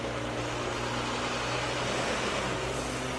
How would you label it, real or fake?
real